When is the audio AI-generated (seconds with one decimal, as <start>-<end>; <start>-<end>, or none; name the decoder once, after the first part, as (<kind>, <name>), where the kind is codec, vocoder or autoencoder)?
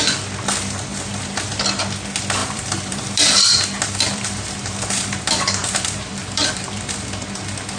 0.9-1.6 (vocoder, BigVGAN v2); 2.4-6.9